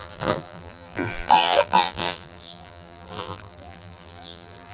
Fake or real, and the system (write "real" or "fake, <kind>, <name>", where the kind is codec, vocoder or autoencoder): fake, vocoder, BigVGAN v2